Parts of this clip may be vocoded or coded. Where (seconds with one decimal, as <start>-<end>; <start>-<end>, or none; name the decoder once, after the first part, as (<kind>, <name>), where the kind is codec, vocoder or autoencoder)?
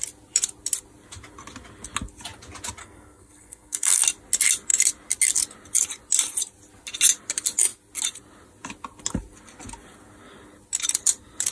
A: 2.8-4.0 (codec, SNAC)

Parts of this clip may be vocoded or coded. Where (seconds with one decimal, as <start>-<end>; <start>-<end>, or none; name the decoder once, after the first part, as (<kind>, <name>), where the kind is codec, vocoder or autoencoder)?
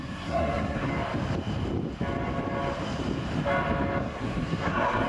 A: 0.0-0.9 (codec, SNAC); 4.0-5.1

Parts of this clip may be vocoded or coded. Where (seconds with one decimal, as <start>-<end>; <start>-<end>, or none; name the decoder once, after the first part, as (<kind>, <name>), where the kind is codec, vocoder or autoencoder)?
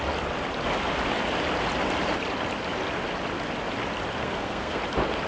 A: 4.2-4.8 (codec, SNAC)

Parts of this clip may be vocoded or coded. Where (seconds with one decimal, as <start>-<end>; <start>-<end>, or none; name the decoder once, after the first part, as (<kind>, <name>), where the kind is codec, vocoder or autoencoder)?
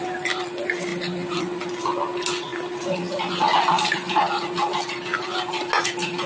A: none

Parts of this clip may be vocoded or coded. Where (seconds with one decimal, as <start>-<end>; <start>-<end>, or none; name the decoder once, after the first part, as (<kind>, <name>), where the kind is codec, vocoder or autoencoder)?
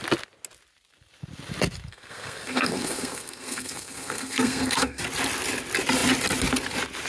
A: 1.9-5.0 (codec, SNAC)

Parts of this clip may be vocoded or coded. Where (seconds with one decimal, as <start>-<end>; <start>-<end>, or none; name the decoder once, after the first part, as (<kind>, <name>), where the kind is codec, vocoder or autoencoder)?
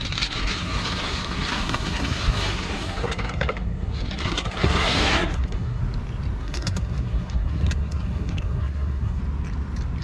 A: 0.0-5.8 (codec, SNAC); 6.4-9.2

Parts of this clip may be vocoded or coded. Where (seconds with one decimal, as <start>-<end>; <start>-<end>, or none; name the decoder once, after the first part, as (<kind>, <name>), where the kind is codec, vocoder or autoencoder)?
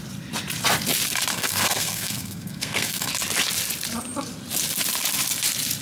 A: 1.3-3.1 (codec, SNAC)